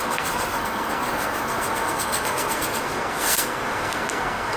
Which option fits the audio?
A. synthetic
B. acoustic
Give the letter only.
A